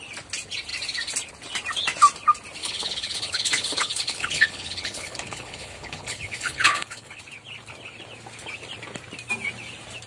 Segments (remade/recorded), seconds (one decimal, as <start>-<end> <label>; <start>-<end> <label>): 0.0-2.6 recorded; 2.6-7.2 remade; 7.2-10.1 recorded